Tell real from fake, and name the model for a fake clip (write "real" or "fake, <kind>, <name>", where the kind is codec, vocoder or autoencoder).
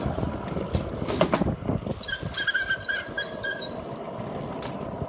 real